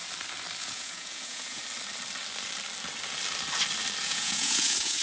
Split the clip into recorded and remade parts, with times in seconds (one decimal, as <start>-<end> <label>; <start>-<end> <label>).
0.0-0.6 recorded; 0.6-1.6 remade; 1.6-4.0 recorded; 4.0-5.0 remade